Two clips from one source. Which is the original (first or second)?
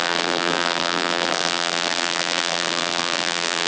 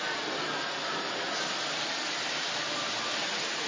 second